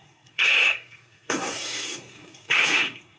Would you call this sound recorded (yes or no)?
no